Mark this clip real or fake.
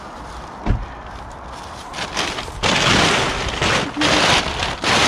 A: real